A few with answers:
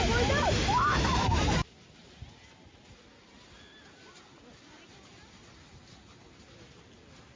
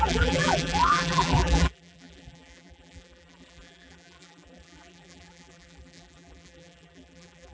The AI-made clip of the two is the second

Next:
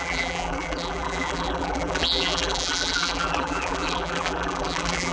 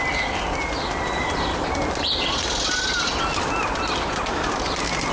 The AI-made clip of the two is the first